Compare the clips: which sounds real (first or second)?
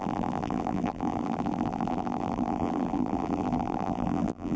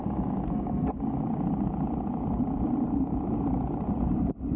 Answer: second